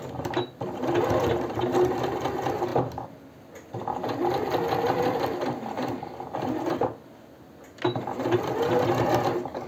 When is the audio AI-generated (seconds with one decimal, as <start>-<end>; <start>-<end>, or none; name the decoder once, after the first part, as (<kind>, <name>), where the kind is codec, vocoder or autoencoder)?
none